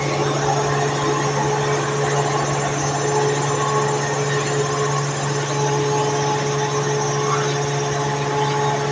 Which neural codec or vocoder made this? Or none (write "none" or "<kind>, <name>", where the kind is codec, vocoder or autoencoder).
none